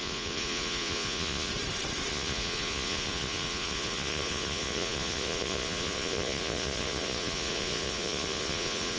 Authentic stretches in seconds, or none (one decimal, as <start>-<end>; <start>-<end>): 1.5-2.1

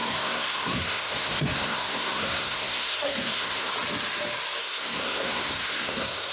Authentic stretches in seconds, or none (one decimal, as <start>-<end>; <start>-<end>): 3.7-4.6

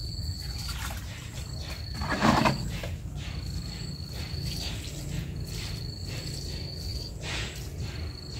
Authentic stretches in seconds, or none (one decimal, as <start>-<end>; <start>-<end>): 2.7-6.9

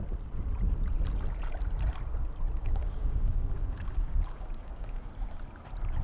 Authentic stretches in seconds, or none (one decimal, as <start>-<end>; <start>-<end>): 0.0-2.6; 5.0-6.0